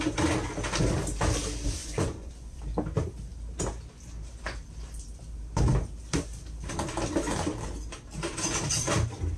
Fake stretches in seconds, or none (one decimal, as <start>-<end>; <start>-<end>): 1.8-2.6

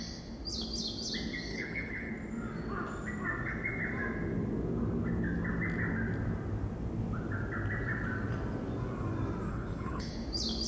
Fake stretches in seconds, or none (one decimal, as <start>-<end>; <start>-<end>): 1.5-2.1; 9.5-10.1

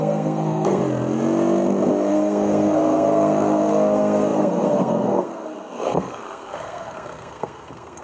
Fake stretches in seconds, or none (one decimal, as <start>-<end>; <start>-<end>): 0.0-0.8; 2.1-8.0

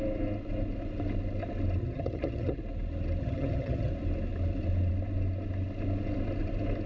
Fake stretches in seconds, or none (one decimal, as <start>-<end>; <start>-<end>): 1.8-2.6; 3.2-3.9